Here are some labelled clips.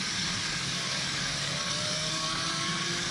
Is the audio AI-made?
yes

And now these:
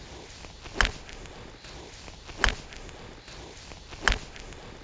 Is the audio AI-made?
no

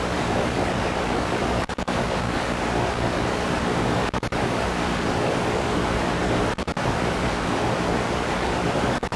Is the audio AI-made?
yes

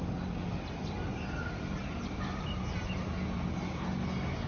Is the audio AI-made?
no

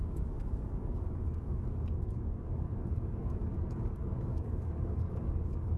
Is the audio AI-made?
yes